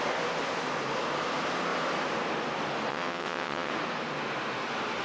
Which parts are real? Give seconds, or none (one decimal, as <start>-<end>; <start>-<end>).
0.0-2.9; 3.7-5.0